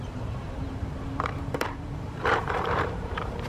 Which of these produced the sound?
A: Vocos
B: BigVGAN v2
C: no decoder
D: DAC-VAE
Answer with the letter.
B